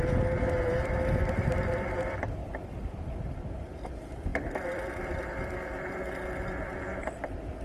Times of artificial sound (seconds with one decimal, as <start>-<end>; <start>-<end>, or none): 2.4-3.4; 4.3-5.2